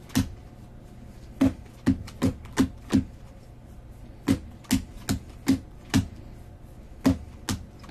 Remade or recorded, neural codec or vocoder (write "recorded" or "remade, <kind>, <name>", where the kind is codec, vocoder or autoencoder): recorded